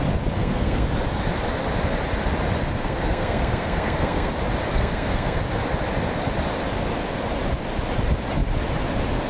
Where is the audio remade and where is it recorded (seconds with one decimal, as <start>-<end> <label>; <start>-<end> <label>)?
0.0-0.4 recorded; 0.4-0.9 remade; 0.9-2.8 recorded; 2.8-4.3 remade; 4.3-4.7 recorded; 4.7-5.4 remade; 5.4-9.3 recorded